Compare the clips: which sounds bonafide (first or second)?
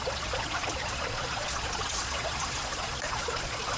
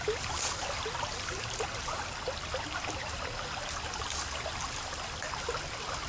second